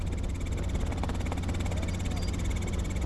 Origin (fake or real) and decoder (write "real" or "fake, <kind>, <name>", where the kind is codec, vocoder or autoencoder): real